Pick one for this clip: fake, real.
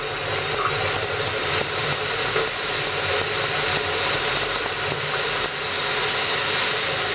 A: real